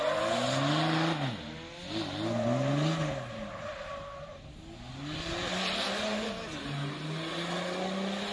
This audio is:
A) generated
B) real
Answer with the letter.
B